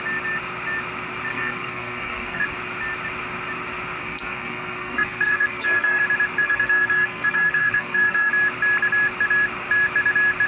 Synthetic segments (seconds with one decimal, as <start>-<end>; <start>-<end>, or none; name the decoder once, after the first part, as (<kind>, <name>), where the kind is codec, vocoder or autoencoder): 1.3-2.4 (codec, SNAC); 4.0-6.0; 6.4-8.3